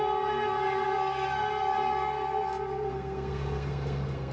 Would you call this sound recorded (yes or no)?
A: no